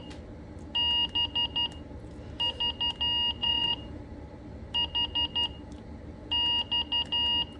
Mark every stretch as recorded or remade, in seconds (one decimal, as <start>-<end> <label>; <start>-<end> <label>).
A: 0.0-3.4 recorded; 3.4-4.0 remade; 4.0-7.6 recorded